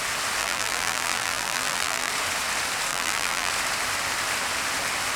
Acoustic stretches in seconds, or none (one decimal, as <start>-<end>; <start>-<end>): 0.0-0.4; 2.1-2.9; 3.5-5.2